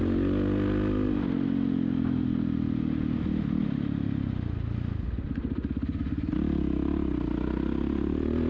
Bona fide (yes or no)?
yes